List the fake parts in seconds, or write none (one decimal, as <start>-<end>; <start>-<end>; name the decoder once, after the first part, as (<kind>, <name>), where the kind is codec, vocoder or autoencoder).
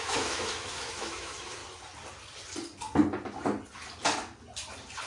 0.0-1.6 (autoencoder, DAC-VAE)